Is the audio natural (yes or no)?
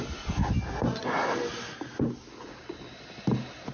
yes